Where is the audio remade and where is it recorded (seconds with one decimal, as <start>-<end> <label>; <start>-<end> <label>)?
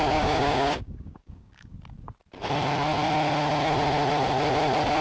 0.0-1.7 remade; 1.7-5.0 recorded